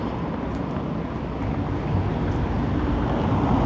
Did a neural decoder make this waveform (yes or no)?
no